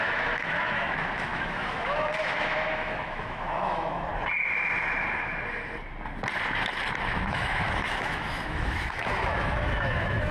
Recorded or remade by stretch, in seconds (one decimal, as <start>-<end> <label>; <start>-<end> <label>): 0.0-4.1 remade; 4.1-7.3 recorded; 7.3-10.3 remade

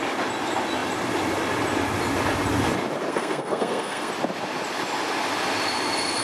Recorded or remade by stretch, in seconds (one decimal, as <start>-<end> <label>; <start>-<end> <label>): 0.0-3.1 recorded; 3.1-4.1 remade; 4.1-6.2 recorded

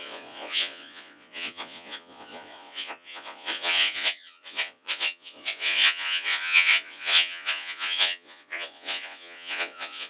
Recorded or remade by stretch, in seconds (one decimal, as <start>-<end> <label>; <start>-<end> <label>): 0.0-10.1 remade

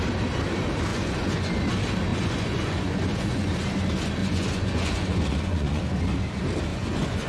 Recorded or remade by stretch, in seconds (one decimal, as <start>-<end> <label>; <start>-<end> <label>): 0.0-0.9 recorded; 0.9-1.5 remade; 1.5-2.1 recorded; 2.1-3.5 remade; 3.5-4.2 recorded; 4.2-5.8 remade; 5.8-6.7 recorded; 6.7-7.3 remade

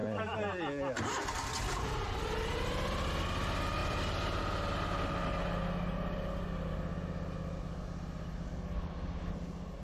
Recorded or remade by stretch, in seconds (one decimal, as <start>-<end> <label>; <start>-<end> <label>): 0.0-3.8 recorded; 3.8-4.4 remade; 4.4-9.8 recorded